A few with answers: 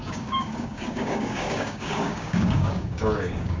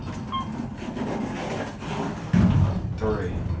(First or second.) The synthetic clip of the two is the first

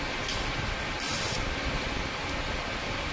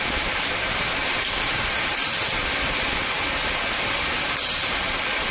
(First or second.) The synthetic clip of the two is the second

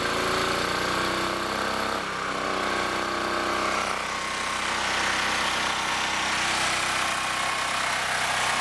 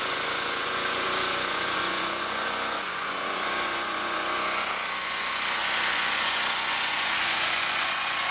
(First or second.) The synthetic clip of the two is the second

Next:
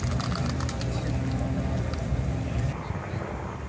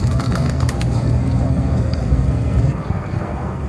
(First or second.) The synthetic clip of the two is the second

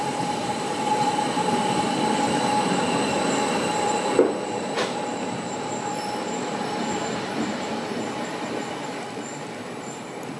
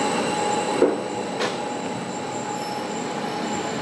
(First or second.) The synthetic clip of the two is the first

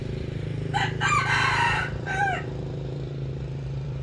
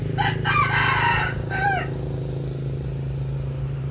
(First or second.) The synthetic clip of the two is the first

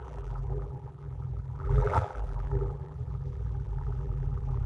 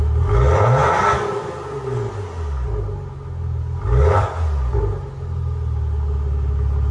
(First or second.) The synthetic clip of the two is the first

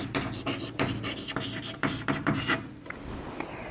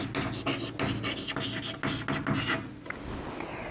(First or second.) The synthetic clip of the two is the first